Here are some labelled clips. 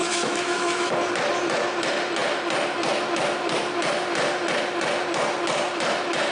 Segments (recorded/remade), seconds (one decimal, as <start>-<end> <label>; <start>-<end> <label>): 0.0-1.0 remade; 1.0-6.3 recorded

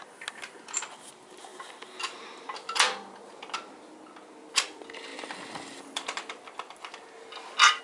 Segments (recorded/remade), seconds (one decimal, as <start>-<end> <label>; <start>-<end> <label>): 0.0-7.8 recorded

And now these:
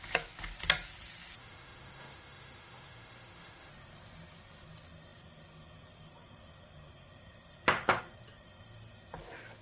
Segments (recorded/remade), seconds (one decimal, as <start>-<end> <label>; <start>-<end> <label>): 0.0-1.4 recorded; 1.4-3.7 remade; 3.7-9.6 recorded

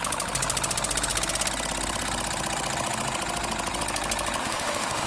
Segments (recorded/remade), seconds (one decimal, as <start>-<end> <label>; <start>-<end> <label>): 0.0-4.4 recorded; 4.4-5.1 remade

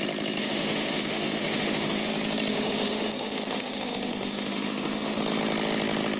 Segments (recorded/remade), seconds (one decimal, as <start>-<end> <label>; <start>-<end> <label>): 0.0-0.4 recorded; 0.4-2.1 remade; 2.1-2.5 recorded; 2.5-5.2 remade; 5.2-6.2 recorded

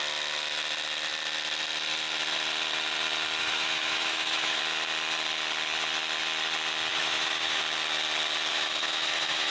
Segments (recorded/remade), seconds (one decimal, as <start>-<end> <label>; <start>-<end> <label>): 0.0-3.4 recorded; 3.4-4.6 remade; 4.6-6.9 recorded; 6.9-7.6 remade; 7.6-8.5 recorded; 8.5-9.5 remade